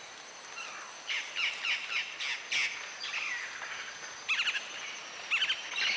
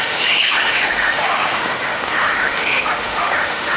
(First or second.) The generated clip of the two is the second